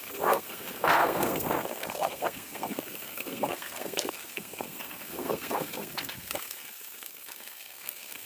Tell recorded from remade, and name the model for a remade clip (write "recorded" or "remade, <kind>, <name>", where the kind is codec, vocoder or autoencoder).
remade, codec, SNAC